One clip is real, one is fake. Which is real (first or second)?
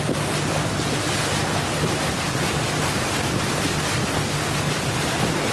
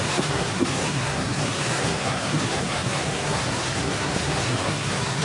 first